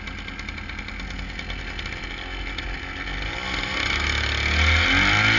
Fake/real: real